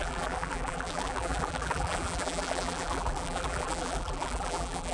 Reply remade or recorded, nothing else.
remade